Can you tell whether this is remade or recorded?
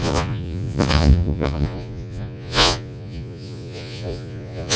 remade